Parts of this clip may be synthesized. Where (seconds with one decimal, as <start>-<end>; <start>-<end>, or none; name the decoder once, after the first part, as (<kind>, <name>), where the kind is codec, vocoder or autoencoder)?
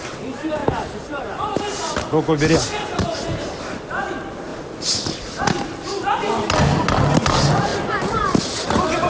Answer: none